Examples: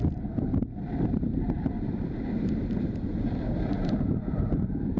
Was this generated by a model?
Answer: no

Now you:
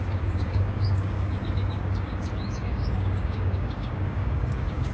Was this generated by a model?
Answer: yes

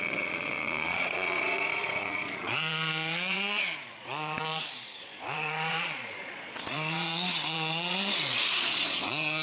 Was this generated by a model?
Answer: yes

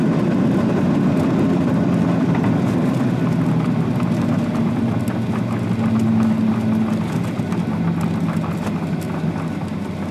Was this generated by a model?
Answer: no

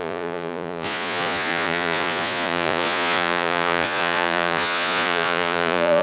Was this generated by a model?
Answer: yes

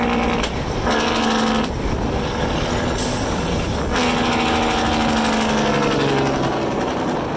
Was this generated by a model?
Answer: no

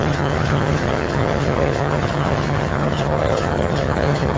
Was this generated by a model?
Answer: yes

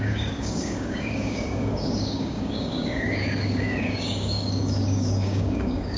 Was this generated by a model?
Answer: yes